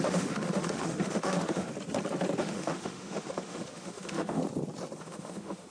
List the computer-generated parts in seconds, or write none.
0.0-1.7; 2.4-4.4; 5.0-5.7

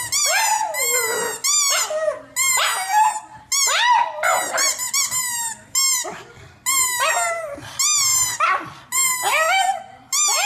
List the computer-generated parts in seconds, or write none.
none